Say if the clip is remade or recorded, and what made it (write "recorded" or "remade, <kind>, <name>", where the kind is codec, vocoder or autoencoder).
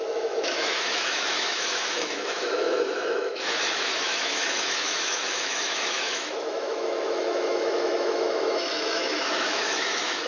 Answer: remade, autoencoder, DAC-VAE